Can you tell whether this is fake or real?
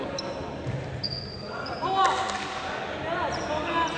real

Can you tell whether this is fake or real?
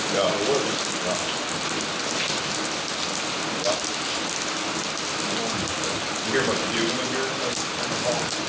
real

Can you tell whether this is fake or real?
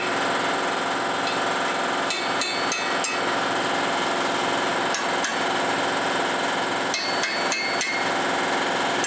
real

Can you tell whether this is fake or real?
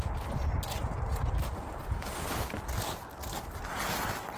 real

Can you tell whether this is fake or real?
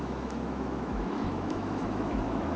fake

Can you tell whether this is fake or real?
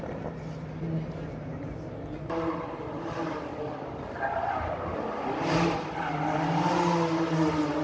real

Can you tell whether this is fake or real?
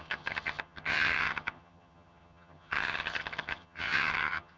fake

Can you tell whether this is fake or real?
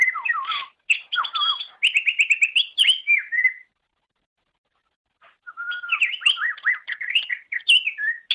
real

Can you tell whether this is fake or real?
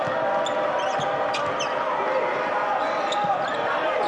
real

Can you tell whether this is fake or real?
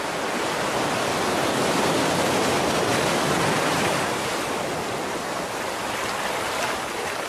real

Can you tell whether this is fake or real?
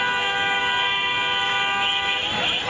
real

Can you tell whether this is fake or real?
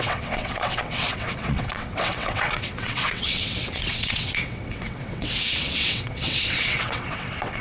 fake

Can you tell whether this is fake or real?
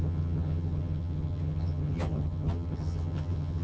fake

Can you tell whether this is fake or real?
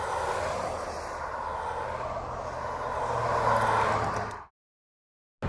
real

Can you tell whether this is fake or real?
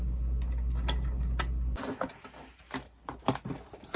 real